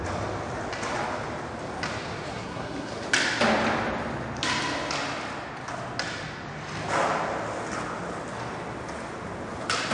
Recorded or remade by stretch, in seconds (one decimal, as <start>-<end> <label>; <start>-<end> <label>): 0.0-2.3 recorded; 2.3-2.9 remade; 2.9-9.9 recorded